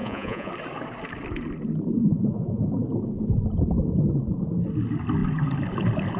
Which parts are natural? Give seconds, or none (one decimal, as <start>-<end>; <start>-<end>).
0.5-2.0; 2.6-6.2